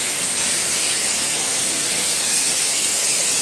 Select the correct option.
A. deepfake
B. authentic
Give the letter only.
A